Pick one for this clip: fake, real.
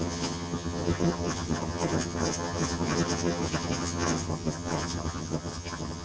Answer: fake